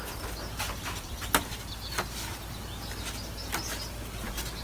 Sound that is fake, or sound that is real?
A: real